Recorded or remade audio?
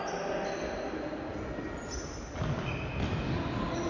recorded